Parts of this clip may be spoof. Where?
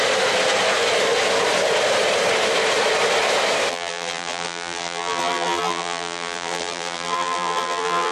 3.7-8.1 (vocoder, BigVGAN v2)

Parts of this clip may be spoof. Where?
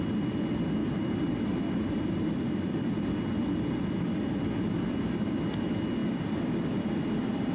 0.8-5.3 (vocoder, BigVGAN v2); 6.0-7.5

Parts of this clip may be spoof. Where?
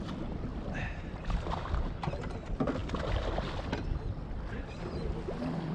0.5-2.0 (vocoder, BigVGAN v2)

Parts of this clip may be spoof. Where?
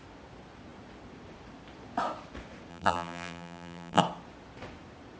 2.7-4.0 (vocoder, BigVGAN v2)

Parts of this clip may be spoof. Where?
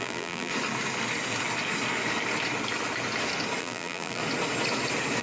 0.0-0.5 (vocoder, BigVGAN v2); 3.6-4.2